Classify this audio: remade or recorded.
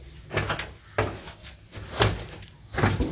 recorded